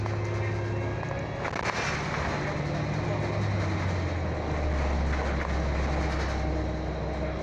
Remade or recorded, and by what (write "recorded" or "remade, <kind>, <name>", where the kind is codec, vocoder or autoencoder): recorded